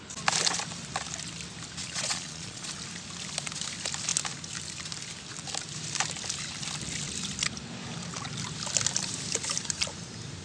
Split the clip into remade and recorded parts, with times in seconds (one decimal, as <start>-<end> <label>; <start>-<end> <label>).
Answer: 0.0-1.8 recorded; 1.8-2.7 remade; 2.7-10.4 recorded